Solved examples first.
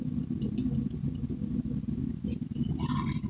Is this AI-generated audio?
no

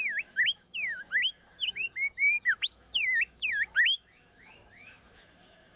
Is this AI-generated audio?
yes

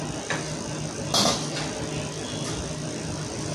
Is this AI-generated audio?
no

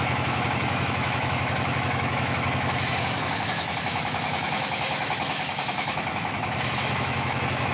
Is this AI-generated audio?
yes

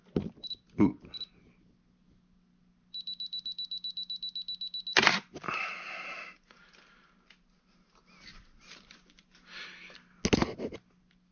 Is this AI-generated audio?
no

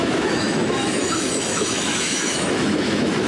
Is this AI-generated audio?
yes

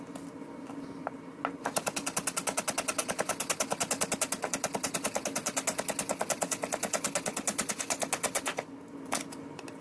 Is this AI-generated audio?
no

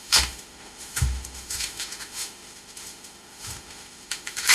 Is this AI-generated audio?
yes